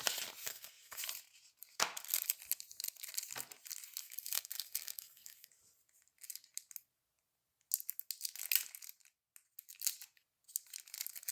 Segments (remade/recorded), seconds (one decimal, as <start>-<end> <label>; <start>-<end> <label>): 0.0-0.4 recorded; 0.4-1.0 remade; 1.0-4.0 recorded; 4.0-5.5 remade; 5.5-11.3 recorded